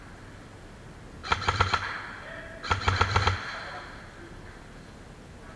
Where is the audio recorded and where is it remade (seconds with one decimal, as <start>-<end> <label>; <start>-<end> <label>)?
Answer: 0.0-5.6 recorded